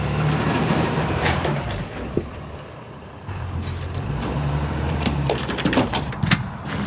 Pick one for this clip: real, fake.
fake